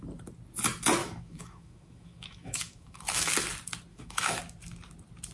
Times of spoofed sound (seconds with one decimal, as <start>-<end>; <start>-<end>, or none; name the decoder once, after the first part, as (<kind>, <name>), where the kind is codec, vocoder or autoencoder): 1.0-3.3 (autoencoder, DAC-VAE); 3.9-4.4